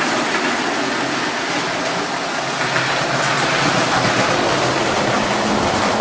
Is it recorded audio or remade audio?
recorded